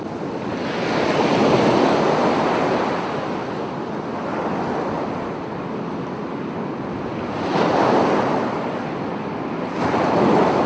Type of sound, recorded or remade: recorded